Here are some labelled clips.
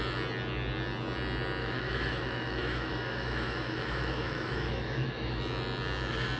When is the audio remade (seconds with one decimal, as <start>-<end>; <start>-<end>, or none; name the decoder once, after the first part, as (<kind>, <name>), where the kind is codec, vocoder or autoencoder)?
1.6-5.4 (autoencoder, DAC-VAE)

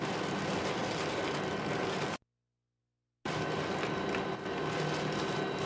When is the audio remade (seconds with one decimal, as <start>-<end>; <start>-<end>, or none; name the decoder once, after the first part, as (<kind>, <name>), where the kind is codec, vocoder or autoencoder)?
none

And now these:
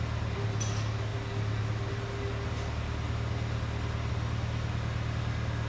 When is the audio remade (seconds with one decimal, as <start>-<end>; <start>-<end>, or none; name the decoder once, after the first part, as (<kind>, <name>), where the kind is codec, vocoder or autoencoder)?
none